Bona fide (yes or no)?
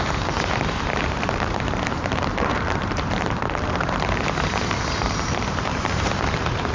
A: no